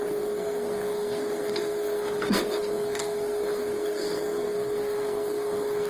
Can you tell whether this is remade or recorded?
remade